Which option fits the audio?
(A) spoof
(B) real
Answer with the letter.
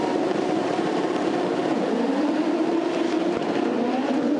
A